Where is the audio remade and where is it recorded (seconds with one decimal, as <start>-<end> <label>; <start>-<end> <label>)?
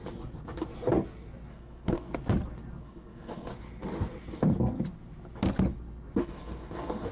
0.0-1.5 recorded; 1.5-2.1 remade; 2.1-2.8 recorded; 2.8-3.5 remade; 3.5-6.2 recorded; 6.2-7.1 remade